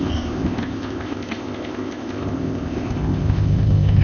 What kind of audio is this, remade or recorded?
remade